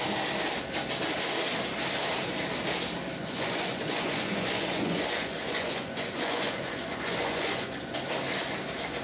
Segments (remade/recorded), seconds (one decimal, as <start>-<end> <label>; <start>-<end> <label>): 0.0-3.2 recorded; 3.2-8.0 remade; 8.0-9.0 recorded